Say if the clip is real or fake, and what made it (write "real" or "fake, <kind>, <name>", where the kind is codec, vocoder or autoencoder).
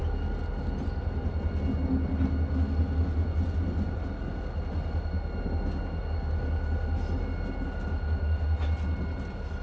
real